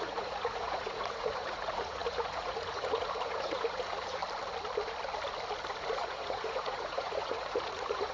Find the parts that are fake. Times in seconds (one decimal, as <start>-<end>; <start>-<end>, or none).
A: 0.0-4.2; 5.7-8.1